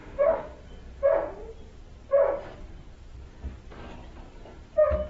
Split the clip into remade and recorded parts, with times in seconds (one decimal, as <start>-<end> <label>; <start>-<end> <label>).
0.0-0.6 remade; 0.6-5.1 recorded